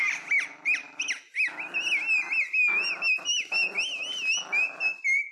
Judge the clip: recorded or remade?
recorded